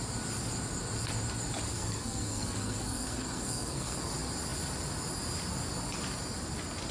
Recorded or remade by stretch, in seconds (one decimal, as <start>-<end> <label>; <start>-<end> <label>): 0.0-1.7 recorded; 1.7-4.1 remade; 4.1-6.9 recorded